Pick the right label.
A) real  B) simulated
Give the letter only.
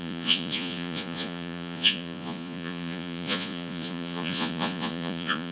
B